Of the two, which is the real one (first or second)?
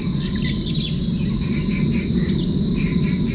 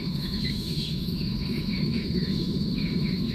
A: first